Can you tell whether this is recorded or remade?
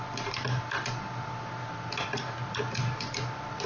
recorded